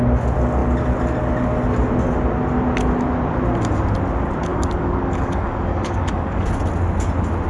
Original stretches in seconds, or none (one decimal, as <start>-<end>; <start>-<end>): 0.0-4.5; 6.5-7.5